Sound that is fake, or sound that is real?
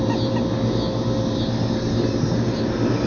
real